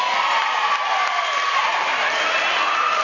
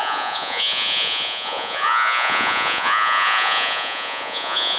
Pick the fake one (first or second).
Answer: second